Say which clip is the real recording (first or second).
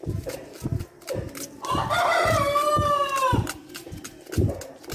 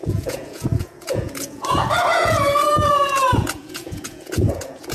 first